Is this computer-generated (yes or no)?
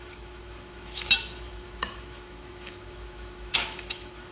yes